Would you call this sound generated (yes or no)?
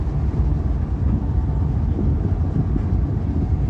no